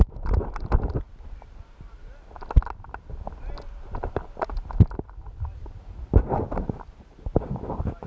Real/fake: real